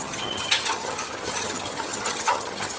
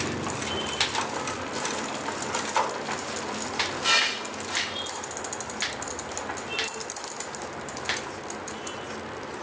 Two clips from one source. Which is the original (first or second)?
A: second